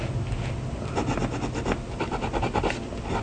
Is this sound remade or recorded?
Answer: recorded